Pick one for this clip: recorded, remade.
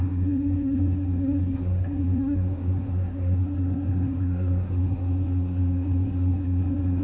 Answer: remade